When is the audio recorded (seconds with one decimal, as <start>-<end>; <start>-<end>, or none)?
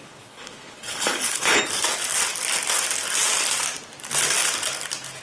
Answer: 1.6-5.2